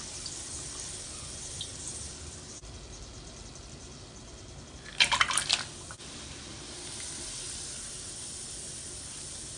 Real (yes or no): yes